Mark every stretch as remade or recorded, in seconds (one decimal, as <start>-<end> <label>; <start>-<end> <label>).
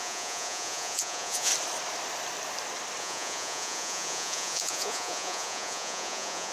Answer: 0.0-1.5 remade; 1.5-3.0 recorded; 3.0-6.5 remade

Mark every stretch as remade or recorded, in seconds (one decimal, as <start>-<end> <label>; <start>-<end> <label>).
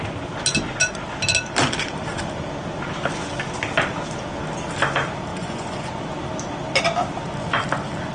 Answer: 0.0-5.3 recorded; 5.3-6.0 remade; 6.0-8.1 recorded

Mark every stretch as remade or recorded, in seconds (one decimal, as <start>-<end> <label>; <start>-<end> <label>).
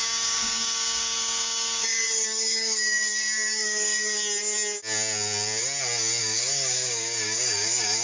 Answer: 0.0-4.2 remade; 4.2-6.2 recorded; 6.2-8.0 remade